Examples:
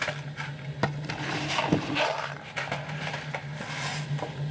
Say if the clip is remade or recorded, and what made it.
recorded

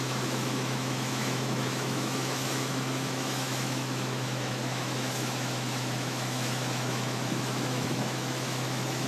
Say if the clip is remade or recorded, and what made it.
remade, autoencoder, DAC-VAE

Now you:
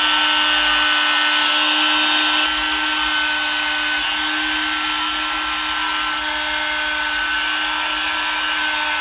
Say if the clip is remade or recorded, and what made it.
recorded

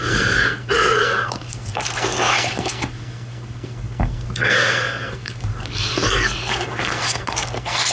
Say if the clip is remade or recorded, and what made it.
remade, codec, SNAC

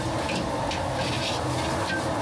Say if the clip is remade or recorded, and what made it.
recorded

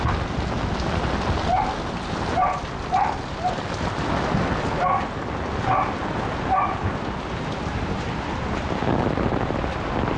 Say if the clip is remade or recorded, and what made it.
recorded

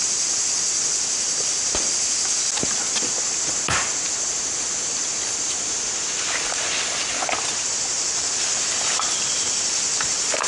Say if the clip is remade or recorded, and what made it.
recorded